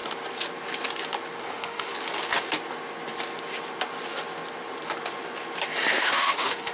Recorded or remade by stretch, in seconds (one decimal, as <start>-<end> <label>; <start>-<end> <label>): 0.0-1.4 recorded; 1.4-1.9 remade; 1.9-5.9 recorded; 5.9-6.7 remade